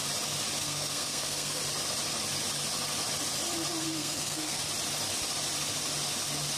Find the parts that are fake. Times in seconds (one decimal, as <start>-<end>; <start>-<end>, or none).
0.6-1.6; 3.8-4.6